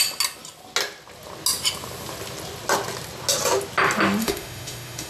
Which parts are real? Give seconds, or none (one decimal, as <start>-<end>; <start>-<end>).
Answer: 0.0-4.2